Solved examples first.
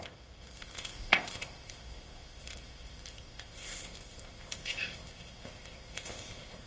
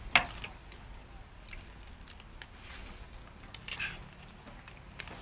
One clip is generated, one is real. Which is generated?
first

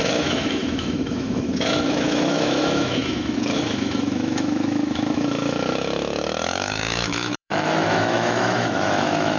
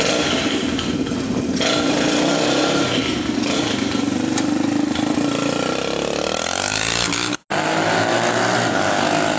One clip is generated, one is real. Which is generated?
first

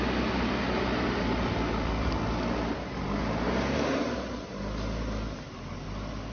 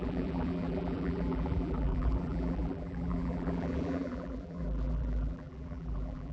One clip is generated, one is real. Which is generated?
second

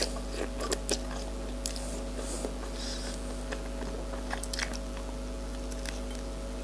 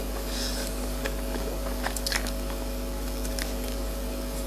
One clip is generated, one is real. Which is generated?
second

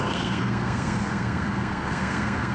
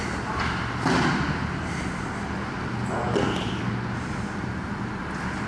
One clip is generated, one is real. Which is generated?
first